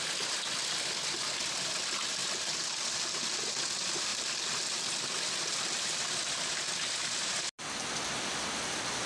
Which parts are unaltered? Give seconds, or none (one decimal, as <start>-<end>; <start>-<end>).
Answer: 0.0-9.1